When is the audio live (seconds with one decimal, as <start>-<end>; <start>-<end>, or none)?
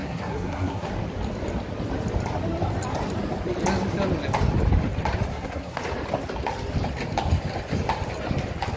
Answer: 0.9-5.3; 5.8-8.8